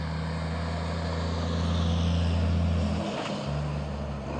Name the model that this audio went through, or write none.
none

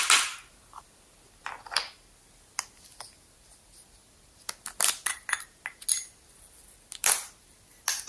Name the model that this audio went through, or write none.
none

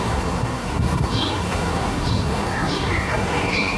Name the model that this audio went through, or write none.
codec, SNAC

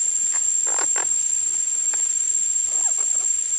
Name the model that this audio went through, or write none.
none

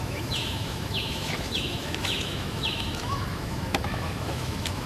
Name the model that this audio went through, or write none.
autoencoder, DAC-VAE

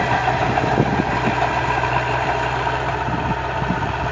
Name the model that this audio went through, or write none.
none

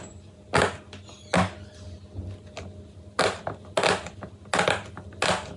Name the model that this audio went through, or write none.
none